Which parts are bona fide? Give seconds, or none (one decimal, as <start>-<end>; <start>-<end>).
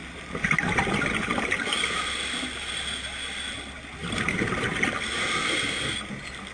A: 0.0-4.0; 4.5-6.5